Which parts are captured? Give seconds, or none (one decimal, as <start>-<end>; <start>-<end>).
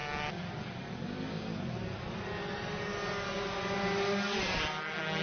0.0-5.2